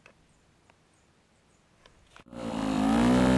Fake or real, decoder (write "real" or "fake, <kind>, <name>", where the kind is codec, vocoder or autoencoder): real